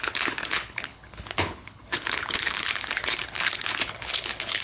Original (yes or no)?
no